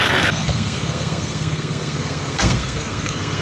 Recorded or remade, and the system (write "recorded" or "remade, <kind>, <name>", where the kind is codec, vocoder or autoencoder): remade, codec, SNAC